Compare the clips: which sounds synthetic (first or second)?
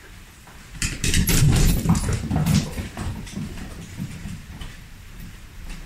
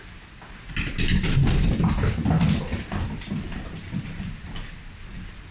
first